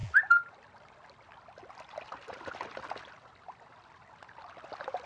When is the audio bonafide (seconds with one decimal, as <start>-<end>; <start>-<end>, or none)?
0.0-5.1